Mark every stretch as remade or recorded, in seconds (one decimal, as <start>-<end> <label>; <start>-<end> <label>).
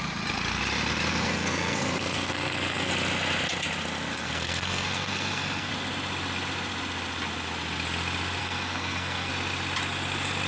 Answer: 0.0-1.1 recorded; 1.1-2.9 remade; 2.9-4.1 recorded; 4.1-5.7 remade; 5.7-8.4 recorded; 8.4-9.3 remade; 9.3-10.5 recorded